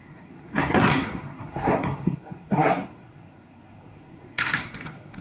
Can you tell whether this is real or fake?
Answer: fake